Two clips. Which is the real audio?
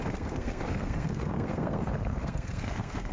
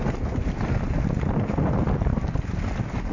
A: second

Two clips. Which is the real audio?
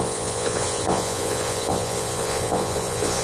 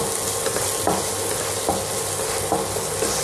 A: second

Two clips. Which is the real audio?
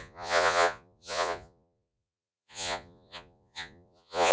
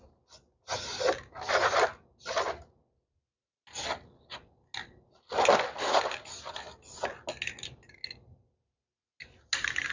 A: second